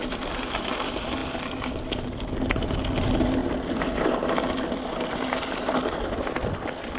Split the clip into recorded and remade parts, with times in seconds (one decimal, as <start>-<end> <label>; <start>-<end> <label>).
0.0-1.2 remade; 1.2-2.3 recorded; 2.3-3.4 remade; 3.4-4.5 recorded; 4.5-7.0 remade